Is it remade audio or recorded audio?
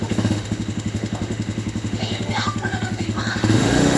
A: remade